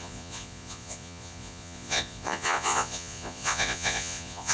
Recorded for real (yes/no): no